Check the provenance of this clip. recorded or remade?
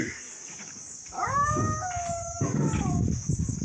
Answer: remade